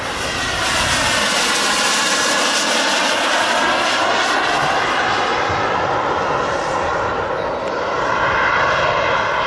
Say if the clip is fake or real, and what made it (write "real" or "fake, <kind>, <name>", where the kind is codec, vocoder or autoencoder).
real